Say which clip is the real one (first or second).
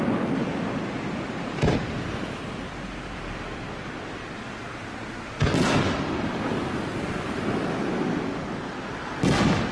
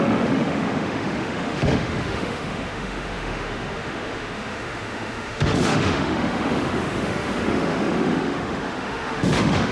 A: first